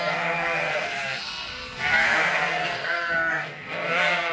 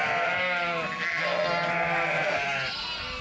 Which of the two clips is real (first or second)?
second